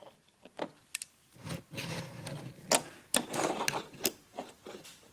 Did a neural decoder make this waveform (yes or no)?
no